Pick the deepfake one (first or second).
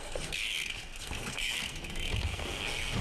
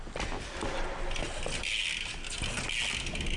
first